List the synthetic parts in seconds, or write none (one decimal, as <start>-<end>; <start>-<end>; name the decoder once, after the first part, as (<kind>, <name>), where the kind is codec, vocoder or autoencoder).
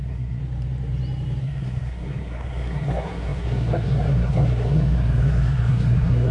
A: 0.0-0.4 (codec, SNAC); 1.4-6.3